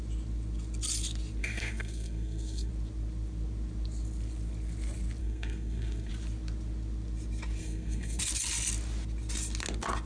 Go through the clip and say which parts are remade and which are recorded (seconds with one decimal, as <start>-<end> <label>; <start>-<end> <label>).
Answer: 0.0-1.4 recorded; 1.4-2.7 remade; 2.7-5.2 recorded; 5.2-6.1 remade; 6.1-7.6 recorded; 7.6-8.2 remade; 8.2-10.1 recorded